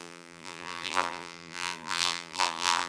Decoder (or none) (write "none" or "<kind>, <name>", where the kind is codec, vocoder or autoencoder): vocoder, BigVGAN v2